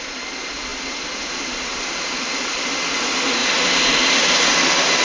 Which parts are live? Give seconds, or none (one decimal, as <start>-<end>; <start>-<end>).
0.0-0.7; 3.0-3.4; 4.1-5.0